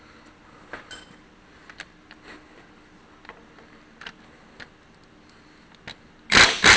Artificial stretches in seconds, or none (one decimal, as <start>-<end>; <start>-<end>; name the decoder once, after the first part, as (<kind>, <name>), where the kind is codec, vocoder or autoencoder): none